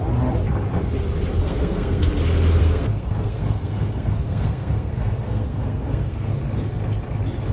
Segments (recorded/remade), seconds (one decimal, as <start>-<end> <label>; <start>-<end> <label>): 0.0-1.4 recorded; 1.4-2.0 remade; 2.0-2.6 recorded; 2.6-6.3 remade; 6.3-7.5 recorded

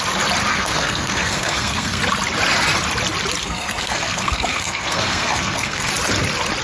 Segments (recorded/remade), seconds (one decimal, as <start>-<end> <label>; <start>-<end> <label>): 0.0-0.5 recorded; 0.5-2.0 remade; 2.0-3.4 recorded; 3.4-5.9 remade; 5.9-6.6 recorded